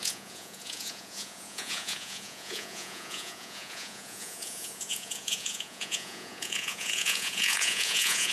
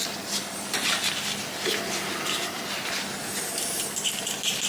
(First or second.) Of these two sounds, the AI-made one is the first